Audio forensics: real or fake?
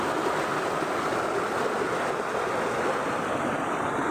real